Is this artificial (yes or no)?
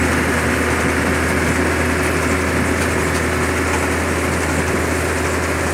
no